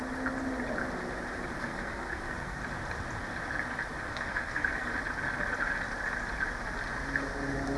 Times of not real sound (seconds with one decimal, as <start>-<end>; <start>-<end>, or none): 1.6-2.6; 4.1-4.9